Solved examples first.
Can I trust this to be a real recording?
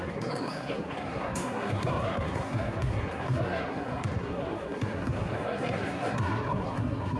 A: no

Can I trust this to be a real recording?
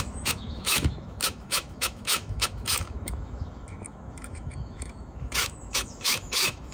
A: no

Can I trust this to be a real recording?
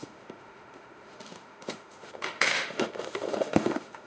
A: no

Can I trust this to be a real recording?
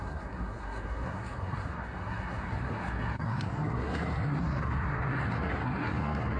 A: no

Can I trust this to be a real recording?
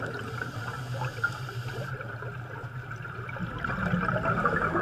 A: yes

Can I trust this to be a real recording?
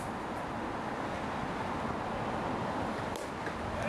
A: yes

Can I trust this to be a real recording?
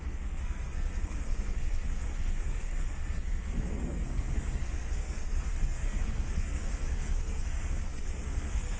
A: no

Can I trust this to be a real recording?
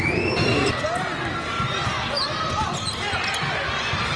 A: yes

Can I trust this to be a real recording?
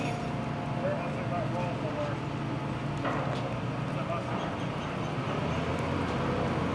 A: yes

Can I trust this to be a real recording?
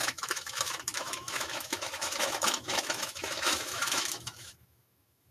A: no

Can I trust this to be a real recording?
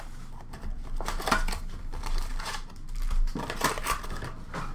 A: yes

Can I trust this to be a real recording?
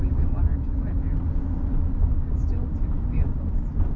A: yes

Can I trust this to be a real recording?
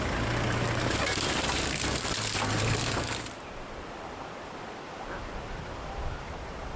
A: no